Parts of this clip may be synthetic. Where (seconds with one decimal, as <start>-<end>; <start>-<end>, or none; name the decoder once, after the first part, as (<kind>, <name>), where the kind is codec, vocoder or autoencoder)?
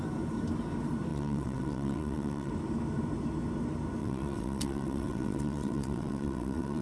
1.1-2.5 (vocoder, WaveNeXt); 4.0-6.8